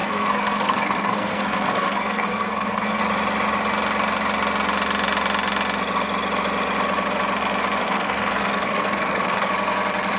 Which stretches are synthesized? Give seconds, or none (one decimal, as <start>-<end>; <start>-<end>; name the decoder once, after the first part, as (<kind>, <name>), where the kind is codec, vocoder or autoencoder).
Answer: 0.0-3.0 (codec, SNAC); 7.8-9.5